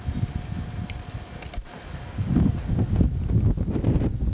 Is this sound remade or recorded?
recorded